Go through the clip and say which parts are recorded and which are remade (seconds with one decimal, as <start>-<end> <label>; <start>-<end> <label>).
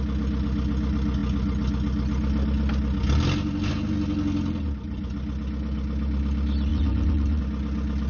0.0-6.7 recorded; 6.7-7.4 remade; 7.4-8.1 recorded